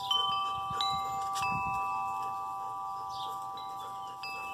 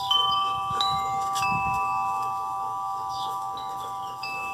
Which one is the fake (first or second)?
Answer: second